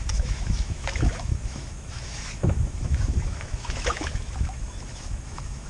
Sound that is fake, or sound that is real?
fake